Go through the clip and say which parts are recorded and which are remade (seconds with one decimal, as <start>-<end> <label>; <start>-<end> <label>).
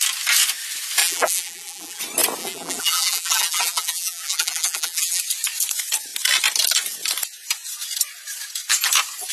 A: 0.0-1.0 recorded; 1.0-2.0 remade; 2.0-2.4 recorded; 2.4-5.2 remade; 5.2-9.3 recorded